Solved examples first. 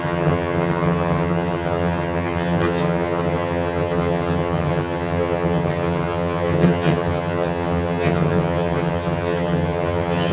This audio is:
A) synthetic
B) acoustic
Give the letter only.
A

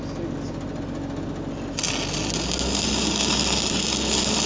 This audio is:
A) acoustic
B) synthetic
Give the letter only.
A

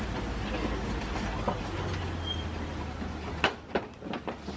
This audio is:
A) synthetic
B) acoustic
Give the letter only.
B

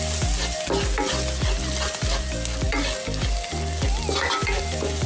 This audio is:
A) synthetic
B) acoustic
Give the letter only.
B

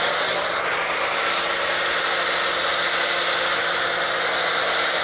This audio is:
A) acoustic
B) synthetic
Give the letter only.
A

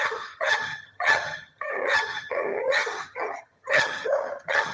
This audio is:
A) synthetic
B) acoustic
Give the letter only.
A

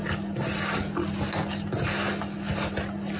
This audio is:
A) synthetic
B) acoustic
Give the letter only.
B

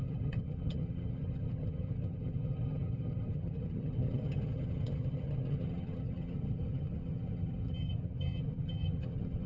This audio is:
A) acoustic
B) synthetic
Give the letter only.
B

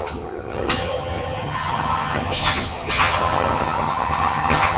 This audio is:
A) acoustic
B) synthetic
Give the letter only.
B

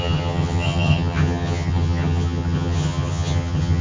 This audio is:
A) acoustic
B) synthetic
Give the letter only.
B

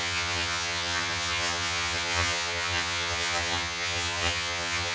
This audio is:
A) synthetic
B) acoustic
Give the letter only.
A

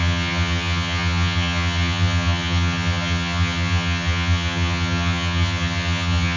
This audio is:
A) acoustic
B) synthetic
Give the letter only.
B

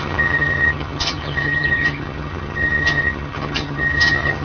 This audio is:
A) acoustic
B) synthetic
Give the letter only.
B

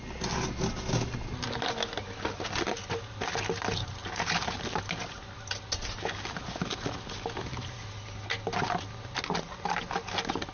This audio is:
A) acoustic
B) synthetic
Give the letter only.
A